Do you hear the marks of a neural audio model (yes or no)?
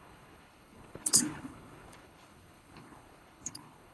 yes